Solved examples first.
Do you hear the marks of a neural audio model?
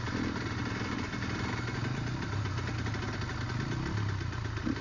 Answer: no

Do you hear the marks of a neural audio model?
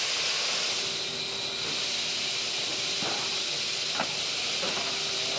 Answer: no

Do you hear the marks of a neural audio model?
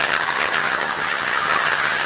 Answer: yes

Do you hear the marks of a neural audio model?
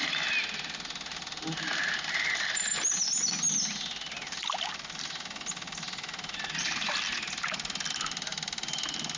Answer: no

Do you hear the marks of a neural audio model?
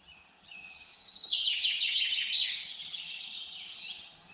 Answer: yes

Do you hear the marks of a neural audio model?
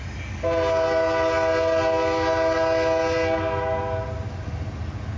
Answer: no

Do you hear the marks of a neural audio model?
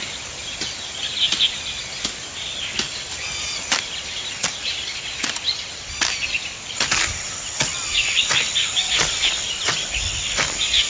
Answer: no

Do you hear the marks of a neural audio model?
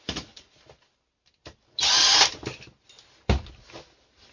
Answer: no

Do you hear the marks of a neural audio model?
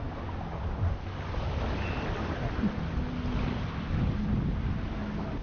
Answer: no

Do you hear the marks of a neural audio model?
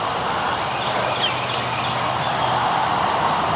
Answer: no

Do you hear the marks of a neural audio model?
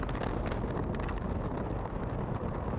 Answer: no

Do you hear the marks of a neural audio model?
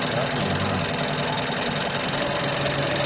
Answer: no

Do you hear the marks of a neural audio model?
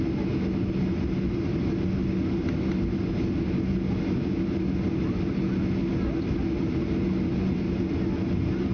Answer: no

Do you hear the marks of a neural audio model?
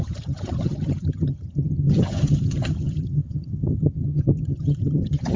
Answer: yes